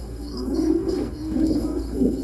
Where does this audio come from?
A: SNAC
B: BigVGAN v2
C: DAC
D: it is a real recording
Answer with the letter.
A